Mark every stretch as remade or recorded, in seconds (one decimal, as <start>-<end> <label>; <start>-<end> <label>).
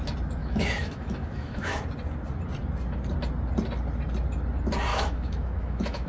0.0-0.4 recorded; 0.4-1.8 remade; 1.8-4.9 recorded; 4.9-6.1 remade